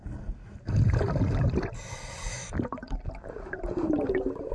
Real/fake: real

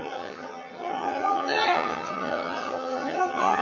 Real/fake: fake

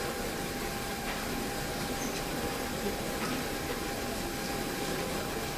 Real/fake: real